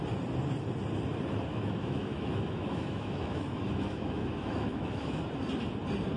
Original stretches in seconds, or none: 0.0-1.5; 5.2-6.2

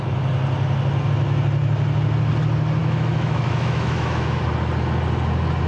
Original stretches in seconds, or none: 0.0-2.8; 4.4-5.7